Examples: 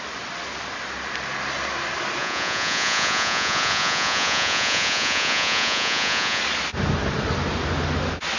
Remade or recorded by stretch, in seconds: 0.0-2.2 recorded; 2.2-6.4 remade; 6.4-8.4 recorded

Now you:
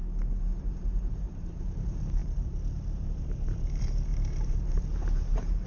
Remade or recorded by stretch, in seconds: 0.0-0.6 recorded; 0.6-5.7 remade

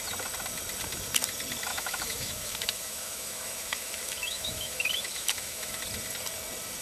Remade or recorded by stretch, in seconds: 0.0-1.7 recorded; 1.7-5.8 remade; 5.8-6.8 recorded

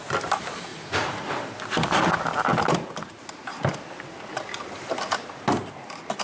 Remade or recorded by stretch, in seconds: 0.0-0.7 recorded; 0.7-1.3 remade; 1.3-6.2 recorded

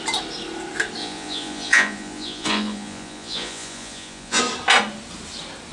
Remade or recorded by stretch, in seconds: 0.0-1.0 recorded; 1.0-4.4 remade; 4.4-5.7 recorded

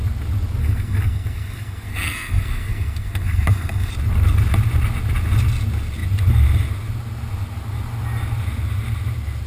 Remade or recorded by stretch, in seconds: 0.0-0.6 recorded; 0.6-3.9 remade; 3.9-9.5 recorded